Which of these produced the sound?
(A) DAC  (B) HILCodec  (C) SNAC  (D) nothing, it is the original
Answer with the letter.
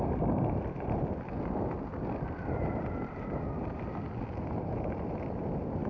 D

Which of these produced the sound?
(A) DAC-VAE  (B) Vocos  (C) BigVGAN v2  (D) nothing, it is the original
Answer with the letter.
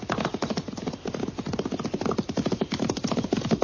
D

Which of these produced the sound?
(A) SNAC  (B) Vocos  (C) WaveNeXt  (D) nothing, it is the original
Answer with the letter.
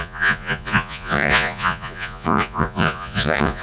B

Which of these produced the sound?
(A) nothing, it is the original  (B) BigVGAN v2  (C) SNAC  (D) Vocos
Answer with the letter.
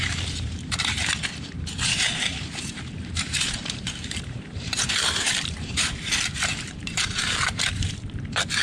B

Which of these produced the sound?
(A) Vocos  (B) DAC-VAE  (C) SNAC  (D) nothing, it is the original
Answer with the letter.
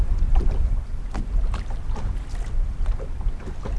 D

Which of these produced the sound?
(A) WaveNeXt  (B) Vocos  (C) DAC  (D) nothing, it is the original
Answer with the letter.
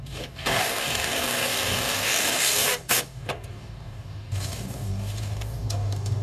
C